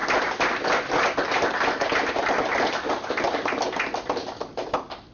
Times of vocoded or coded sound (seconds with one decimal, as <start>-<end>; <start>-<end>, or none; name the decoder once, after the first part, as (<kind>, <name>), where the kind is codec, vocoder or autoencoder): none